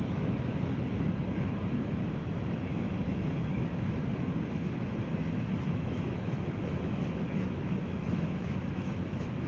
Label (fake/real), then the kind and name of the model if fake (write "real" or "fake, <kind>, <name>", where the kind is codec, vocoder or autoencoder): fake, autoencoder, DAC-VAE